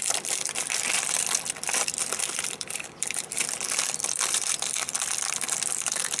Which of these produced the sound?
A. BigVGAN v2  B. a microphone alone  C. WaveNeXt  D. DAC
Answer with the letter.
A